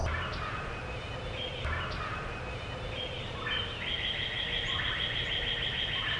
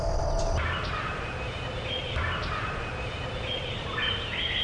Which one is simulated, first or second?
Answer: second